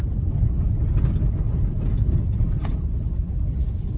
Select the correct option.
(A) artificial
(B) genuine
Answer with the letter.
A